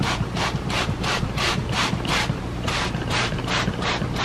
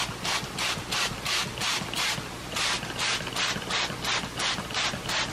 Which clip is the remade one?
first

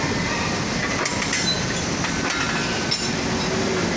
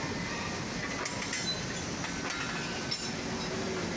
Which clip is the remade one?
first